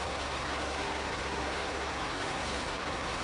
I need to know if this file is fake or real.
fake